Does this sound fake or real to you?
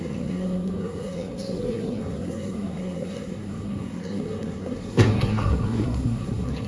fake